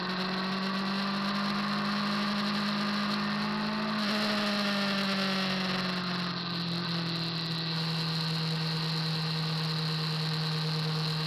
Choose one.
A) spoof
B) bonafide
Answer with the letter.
B